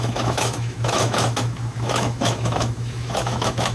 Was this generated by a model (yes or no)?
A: yes